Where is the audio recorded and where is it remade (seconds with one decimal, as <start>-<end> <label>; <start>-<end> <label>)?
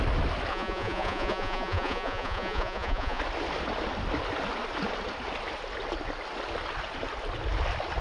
0.0-0.5 recorded; 0.5-3.2 remade; 3.2-8.0 recorded